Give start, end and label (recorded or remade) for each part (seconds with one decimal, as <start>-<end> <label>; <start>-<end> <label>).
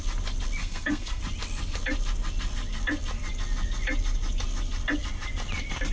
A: 0.0-0.6 recorded; 0.6-1.2 remade; 1.2-5.9 recorded